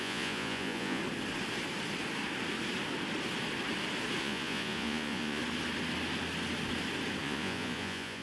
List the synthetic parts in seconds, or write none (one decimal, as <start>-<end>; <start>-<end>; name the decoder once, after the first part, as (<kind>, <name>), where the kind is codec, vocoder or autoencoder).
0.0-1.0 (vocoder, Vocos); 4.2-5.4; 7.2-8.2

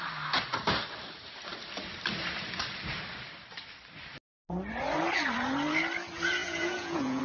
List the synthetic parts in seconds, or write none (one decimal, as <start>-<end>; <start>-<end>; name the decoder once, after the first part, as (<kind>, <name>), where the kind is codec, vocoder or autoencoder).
6.4-7.2 (vocoder, Vocos)

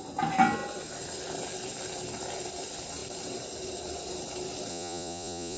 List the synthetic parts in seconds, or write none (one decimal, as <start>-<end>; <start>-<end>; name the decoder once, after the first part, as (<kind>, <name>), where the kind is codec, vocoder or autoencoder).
4.7-5.6 (vocoder, Vocos)

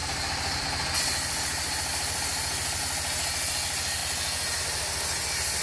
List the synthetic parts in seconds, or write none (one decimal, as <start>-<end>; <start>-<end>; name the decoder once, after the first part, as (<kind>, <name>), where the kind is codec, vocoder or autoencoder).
none

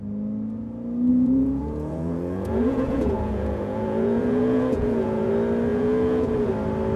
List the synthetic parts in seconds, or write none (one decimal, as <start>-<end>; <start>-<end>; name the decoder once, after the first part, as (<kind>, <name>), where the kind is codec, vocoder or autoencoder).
1.1-5.3 (vocoder, Vocos); 5.7-6.5

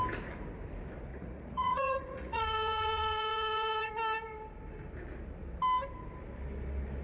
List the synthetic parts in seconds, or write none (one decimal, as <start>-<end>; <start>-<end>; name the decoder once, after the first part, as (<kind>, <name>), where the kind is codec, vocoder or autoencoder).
1.1-3.9 (vocoder, Vocos)

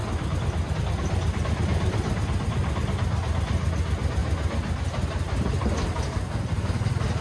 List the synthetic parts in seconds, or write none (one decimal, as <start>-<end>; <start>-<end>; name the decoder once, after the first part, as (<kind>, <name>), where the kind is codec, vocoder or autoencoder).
none